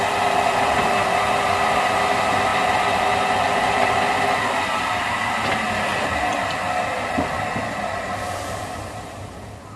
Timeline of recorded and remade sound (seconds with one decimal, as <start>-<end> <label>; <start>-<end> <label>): 0.0-9.8 recorded